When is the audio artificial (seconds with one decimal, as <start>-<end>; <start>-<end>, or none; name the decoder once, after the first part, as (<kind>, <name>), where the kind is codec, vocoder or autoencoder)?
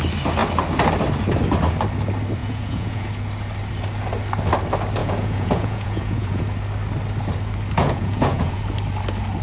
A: 2.4-3.1 (vocoder, Vocos); 5.0-6.4; 7.8-8.6